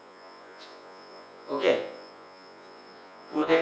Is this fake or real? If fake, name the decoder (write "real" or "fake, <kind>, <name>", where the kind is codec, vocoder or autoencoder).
fake, vocoder, Vocos